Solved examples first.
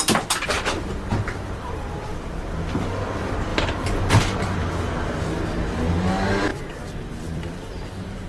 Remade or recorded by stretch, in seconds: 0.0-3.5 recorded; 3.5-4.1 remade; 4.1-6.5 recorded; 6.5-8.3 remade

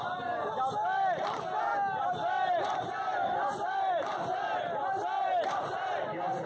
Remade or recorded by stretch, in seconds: 0.0-6.5 recorded

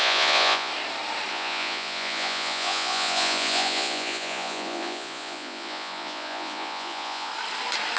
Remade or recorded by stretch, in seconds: 0.0-0.7 remade; 0.7-1.3 recorded; 1.3-7.3 remade; 7.3-8.0 recorded

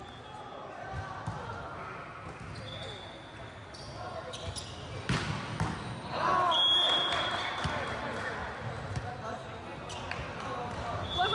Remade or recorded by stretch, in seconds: 0.0-11.3 recorded

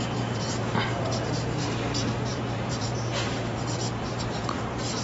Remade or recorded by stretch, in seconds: 0.0-5.0 remade

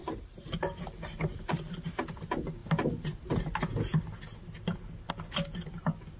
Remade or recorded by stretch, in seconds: 0.0-2.0 remade; 2.0-6.2 recorded

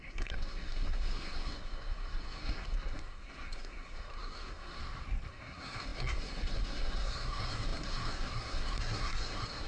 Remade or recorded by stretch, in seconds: 0.0-4.8 remade; 4.8-5.3 recorded; 5.3-9.7 remade